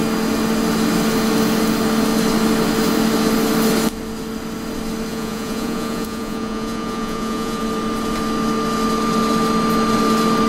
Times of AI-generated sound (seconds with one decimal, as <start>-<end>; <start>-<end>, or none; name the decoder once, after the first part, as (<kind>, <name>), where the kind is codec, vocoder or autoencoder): 5.1-7.6 (vocoder, Vocos)